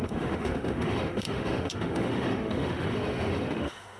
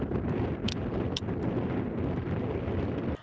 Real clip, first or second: second